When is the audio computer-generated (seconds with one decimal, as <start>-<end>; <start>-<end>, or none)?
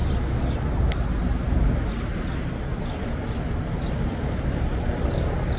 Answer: none